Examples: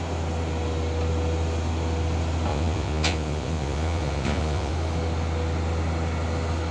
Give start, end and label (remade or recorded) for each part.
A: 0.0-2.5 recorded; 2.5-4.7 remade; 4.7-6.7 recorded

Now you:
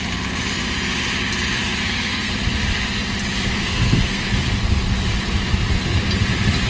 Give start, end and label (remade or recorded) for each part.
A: 0.0-1.8 recorded; 1.8-2.3 remade; 2.3-3.6 recorded; 3.6-4.3 remade; 4.3-6.7 recorded

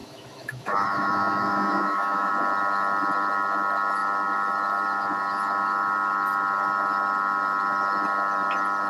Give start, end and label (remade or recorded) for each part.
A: 0.0-2.3 remade; 2.3-8.9 recorded

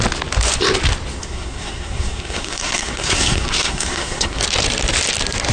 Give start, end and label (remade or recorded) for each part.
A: 0.0-1.1 recorded; 1.1-4.4 remade; 4.4-5.5 recorded

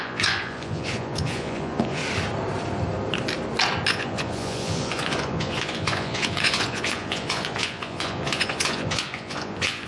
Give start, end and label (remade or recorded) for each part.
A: 0.0-2.0 remade; 2.0-3.9 recorded; 3.9-9.9 remade

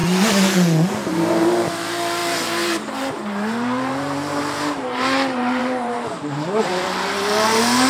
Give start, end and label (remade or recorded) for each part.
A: 0.0-0.9 recorded; 0.9-7.9 remade

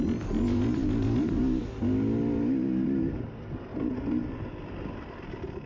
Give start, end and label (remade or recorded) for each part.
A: 0.0-5.7 recorded

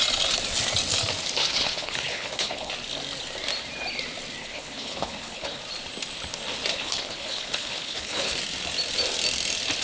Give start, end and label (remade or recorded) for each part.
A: 0.0-1.4 recorded; 1.4-2.7 remade; 2.7-4.4 recorded; 4.4-5.6 remade; 5.6-6.7 recorded; 6.7-8.4 remade; 8.4-9.8 recorded